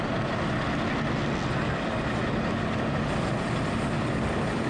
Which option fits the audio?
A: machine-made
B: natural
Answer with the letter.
B